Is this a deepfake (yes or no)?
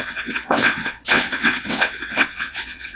yes